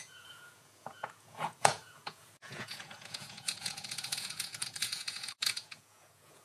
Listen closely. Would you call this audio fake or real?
fake